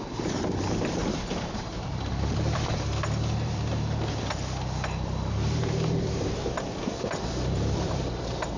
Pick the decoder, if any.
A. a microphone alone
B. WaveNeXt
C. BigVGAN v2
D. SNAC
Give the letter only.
C